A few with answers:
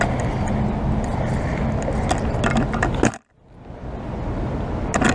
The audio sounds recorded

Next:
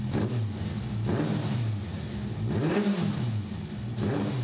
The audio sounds recorded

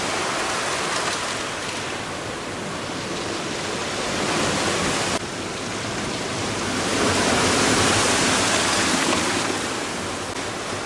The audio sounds recorded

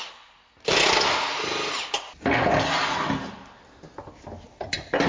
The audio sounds recorded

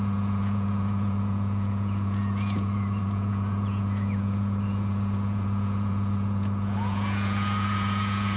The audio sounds remade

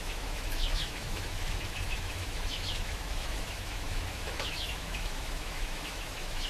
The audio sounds remade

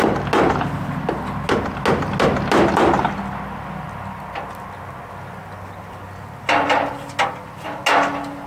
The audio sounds recorded